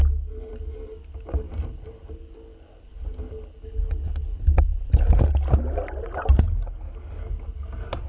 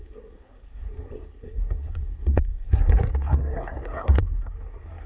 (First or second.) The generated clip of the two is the second